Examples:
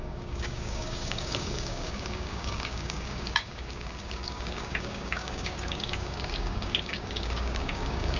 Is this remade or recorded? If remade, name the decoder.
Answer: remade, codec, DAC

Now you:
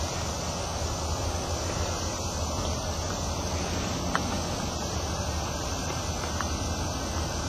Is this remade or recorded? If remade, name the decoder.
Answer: recorded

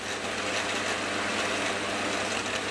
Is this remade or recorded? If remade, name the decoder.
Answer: recorded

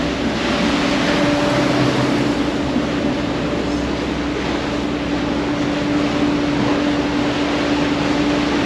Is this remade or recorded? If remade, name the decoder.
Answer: recorded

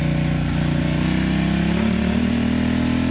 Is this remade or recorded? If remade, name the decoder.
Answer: recorded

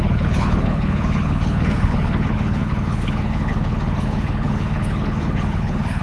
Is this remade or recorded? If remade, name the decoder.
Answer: remade, codec, HILCodec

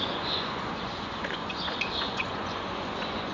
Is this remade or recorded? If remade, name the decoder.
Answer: remade, vocoder, Vocos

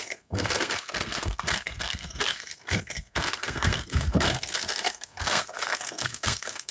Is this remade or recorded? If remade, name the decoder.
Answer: remade, codec, SNAC